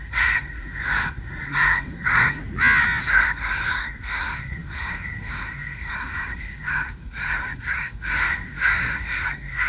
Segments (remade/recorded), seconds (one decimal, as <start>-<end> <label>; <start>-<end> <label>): 0.0-2.4 remade; 2.4-3.0 recorded; 3.0-9.7 remade